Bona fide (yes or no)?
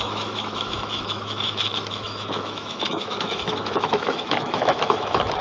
no